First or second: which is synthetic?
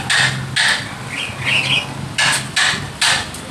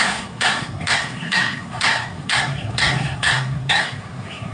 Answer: second